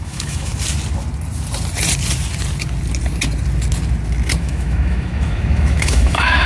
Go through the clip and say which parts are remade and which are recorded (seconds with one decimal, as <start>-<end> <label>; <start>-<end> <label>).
0.0-0.5 remade; 0.5-4.4 recorded; 4.4-6.5 remade